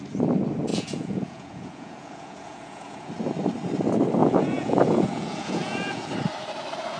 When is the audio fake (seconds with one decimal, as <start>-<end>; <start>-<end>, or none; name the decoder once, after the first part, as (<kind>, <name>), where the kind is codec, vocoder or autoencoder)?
0.7-3.1 (vocoder, Vocos); 4.2-6.1